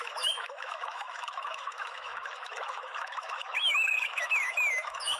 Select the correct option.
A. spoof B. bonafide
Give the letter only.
A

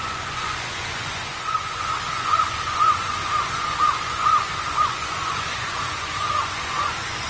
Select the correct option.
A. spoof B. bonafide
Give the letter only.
A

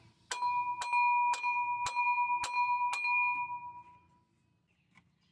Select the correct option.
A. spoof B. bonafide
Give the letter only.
B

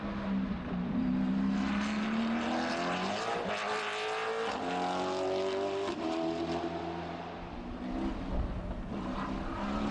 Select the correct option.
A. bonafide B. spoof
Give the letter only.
A